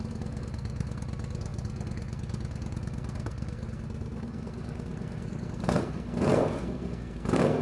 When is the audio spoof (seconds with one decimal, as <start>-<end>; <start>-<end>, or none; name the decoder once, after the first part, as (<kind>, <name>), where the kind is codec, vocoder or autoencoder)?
0.0-7.6 (codec, SNAC)